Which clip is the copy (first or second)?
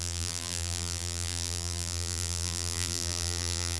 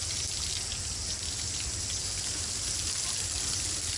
first